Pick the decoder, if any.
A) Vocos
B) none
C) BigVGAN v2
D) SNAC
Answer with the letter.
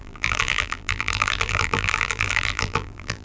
C